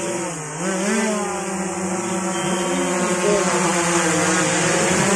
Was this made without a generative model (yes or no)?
yes